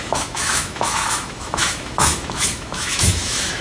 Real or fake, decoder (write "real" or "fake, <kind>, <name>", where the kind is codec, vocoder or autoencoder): fake, autoencoder, DAC-VAE